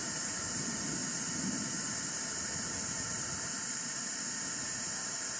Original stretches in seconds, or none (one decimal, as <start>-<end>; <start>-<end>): 0.6-1.0; 4.2-5.4

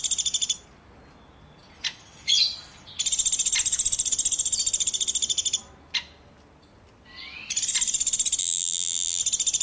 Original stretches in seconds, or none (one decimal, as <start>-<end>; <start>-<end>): 0.0-8.4; 9.2-9.6

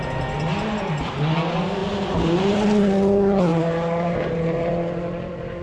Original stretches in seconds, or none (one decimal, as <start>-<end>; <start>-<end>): 0.0-1.8; 2.8-3.5; 4.7-5.6

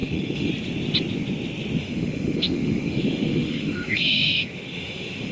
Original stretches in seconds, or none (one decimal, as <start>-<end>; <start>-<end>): 0.5-1.8

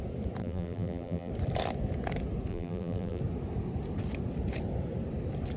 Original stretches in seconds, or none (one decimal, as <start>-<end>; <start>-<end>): 0.0-0.4; 1.3-2.5; 3.2-5.6